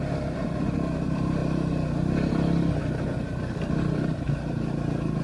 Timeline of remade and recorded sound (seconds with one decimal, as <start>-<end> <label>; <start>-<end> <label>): 0.0-5.2 recorded